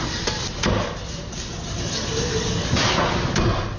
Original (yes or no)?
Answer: yes